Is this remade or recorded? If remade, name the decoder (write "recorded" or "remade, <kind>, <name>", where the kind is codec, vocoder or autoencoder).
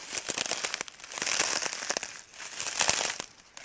recorded